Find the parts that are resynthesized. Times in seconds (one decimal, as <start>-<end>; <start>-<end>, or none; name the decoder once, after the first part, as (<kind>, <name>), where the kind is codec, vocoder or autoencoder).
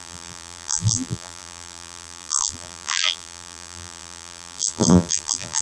0.0-5.6 (vocoder, BigVGAN v2)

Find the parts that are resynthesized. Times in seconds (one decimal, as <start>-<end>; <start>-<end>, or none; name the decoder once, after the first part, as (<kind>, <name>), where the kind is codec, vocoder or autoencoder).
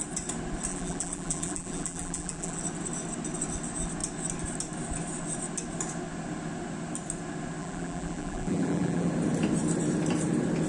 0.7-2.6 (vocoder, BigVGAN v2); 7.6-9.1